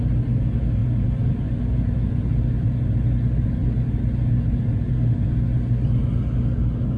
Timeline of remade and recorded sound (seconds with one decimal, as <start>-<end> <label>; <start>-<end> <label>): 0.0-7.0 recorded